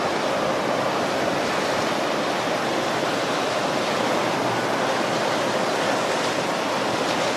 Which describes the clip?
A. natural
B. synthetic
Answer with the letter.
A